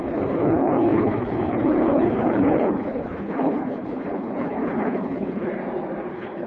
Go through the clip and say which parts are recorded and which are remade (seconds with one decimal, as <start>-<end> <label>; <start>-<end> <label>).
0.0-5.5 remade; 5.5-6.1 recorded; 6.1-6.5 remade